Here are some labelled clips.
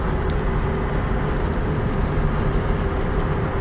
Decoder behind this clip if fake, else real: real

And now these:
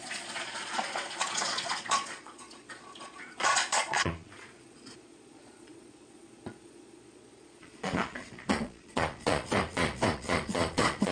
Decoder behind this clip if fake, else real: fake, vocoder, Vocos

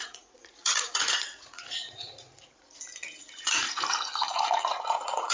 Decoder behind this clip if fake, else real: fake, vocoder, Vocos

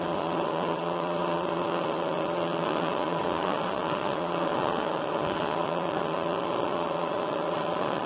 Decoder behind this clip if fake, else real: fake, vocoder, Vocos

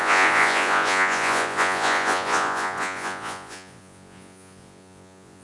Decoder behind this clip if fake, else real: fake, vocoder, Vocos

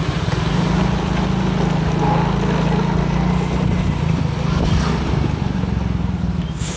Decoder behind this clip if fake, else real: real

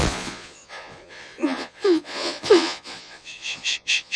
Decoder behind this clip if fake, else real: fake, vocoder, Vocos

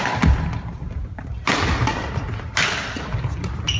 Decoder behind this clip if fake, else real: real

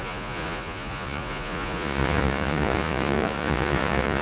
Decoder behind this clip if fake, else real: fake, vocoder, Vocos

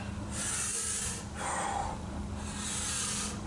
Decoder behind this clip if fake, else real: real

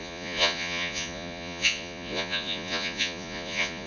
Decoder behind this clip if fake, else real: fake, vocoder, Vocos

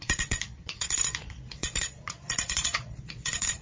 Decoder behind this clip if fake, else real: fake, vocoder, Vocos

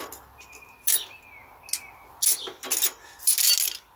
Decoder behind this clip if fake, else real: real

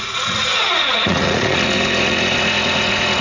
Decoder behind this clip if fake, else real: fake, vocoder, Vocos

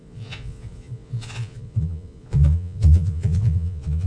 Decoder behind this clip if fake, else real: fake, vocoder, Vocos